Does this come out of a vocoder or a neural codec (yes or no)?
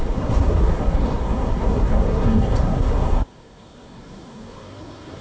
yes